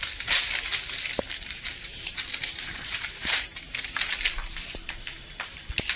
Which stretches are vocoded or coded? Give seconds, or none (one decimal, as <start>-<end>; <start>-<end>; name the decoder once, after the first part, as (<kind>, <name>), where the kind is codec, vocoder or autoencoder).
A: 1.7-3.7 (vocoder, BigVGAN v2)